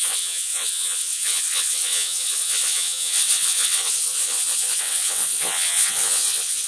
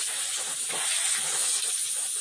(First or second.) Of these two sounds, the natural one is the second